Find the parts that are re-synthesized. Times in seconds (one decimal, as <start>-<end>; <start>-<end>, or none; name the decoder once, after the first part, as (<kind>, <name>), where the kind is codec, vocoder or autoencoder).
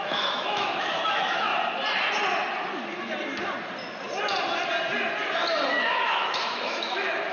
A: 0.0-1.5 (autoencoder, DAC-VAE); 5.7-7.3